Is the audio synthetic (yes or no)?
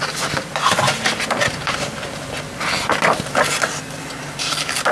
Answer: no